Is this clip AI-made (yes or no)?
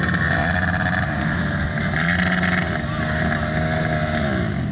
no